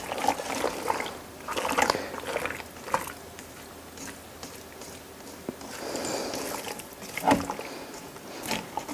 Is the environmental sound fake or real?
real